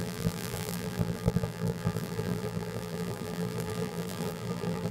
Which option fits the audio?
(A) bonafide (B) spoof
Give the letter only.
B